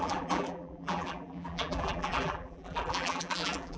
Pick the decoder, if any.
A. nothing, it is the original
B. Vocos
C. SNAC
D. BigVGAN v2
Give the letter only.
D